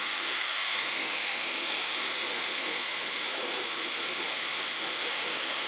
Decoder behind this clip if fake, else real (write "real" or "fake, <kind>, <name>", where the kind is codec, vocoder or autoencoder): fake, autoencoder, DAC-VAE